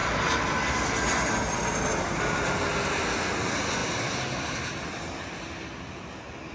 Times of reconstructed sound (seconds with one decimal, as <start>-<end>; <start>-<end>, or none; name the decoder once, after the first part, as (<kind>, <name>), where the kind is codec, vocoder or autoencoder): none